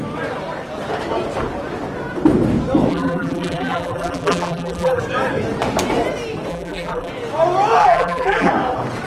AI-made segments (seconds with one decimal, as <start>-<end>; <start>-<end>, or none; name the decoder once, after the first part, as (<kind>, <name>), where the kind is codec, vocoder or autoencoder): 2.9-5.0 (vocoder, BigVGAN v2); 6.5-7.1; 7.8-8.5